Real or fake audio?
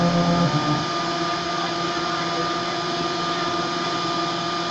real